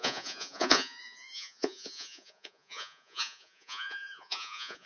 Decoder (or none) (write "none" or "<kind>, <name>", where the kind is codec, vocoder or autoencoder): vocoder, Vocos